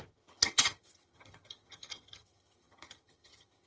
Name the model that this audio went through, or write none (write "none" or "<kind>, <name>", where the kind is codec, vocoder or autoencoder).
vocoder, HiFi-GAN